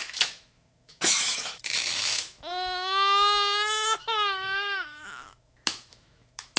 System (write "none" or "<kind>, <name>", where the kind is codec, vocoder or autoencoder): autoencoder, DAC-VAE